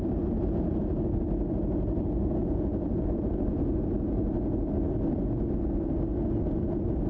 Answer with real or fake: real